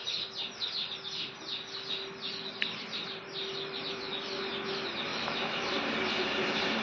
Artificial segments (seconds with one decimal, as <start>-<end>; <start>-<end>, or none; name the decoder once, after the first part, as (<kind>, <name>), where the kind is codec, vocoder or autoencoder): 5.1-5.7 (autoencoder, DAC-VAE)